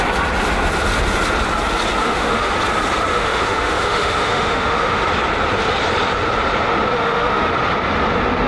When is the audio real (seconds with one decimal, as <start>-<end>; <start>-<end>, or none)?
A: 0.0-2.0; 2.5-3.1; 5.1-6.9; 7.5-8.5